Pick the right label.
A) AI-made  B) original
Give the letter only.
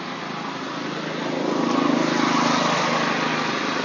B